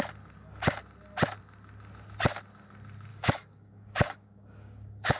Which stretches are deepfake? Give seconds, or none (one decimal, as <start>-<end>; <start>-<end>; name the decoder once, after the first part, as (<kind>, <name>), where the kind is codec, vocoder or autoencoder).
3.1-5.2 (codec, DAC)